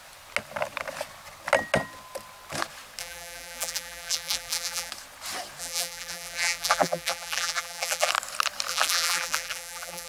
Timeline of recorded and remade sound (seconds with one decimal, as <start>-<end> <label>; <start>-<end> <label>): 0.0-3.0 recorded; 3.0-4.9 remade; 4.9-5.6 recorded; 5.6-8.1 remade; 8.1-8.7 recorded; 8.7-10.1 remade